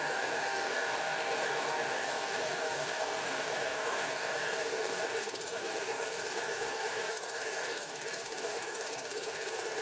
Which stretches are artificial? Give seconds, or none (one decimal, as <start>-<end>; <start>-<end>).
0.0-9.8